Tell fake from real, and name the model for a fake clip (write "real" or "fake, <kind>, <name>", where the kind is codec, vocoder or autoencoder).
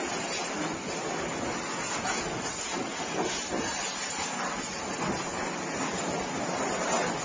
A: real